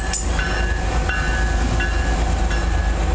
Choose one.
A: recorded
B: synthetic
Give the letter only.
A